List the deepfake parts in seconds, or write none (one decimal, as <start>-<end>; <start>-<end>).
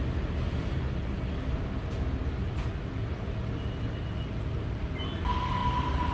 none